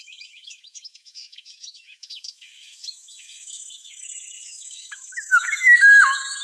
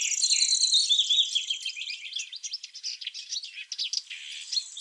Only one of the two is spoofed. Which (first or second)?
first